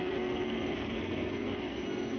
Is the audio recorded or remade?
remade